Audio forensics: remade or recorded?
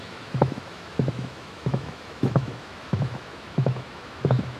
remade